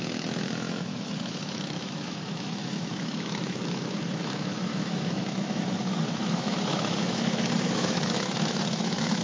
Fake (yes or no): yes